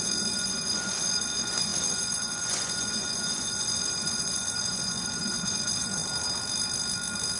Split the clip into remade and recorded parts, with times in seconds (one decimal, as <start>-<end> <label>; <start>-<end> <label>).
0.0-6.0 remade; 6.0-7.4 recorded